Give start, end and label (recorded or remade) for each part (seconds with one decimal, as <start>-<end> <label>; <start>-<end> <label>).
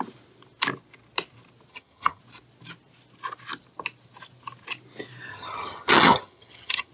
0.0-1.7 recorded; 1.7-2.2 remade; 2.2-5.3 recorded; 5.3-6.9 remade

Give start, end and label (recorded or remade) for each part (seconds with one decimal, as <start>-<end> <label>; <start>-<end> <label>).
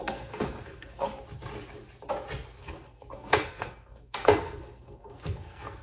0.0-1.1 remade; 1.1-2.6 recorded; 2.6-5.8 remade